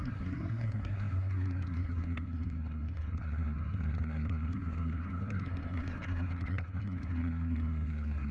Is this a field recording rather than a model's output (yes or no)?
no